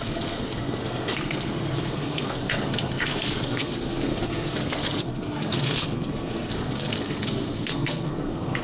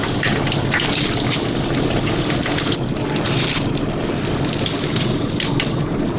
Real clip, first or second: second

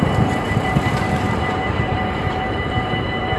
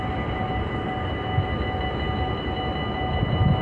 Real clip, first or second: second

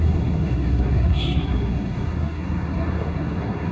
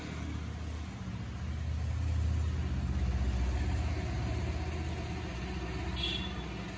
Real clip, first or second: second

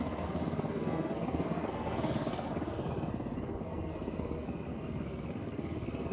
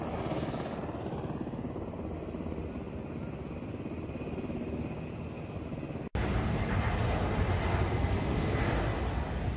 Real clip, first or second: second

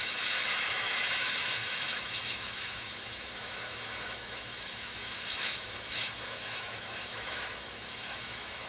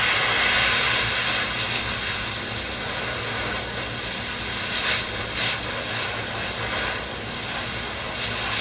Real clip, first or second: second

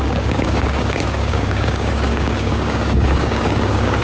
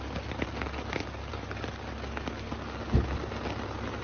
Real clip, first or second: second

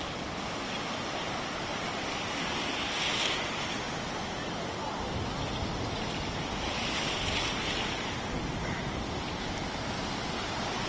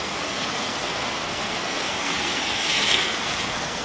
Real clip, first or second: first